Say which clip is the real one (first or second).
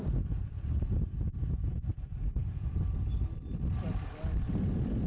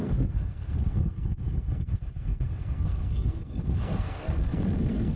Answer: first